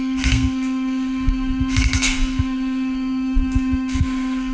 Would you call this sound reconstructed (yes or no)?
yes